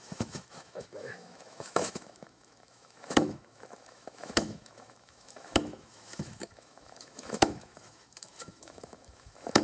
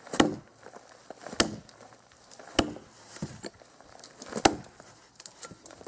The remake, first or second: first